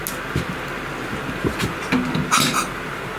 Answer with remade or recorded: recorded